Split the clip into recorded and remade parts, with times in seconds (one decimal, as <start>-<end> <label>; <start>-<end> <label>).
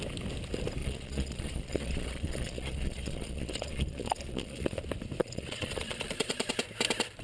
0.0-0.8 recorded; 0.8-4.8 remade; 4.8-5.2 recorded; 5.2-6.5 remade; 6.5-7.2 recorded